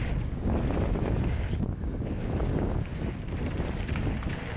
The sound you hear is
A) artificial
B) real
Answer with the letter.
B